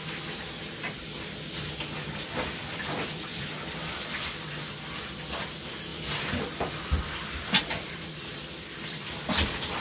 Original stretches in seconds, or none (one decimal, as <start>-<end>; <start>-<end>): 0.0-9.8